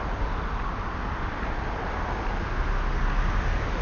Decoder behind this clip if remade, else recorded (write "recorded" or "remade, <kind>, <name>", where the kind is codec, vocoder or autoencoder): recorded